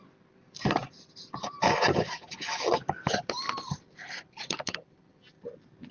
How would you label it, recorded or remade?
recorded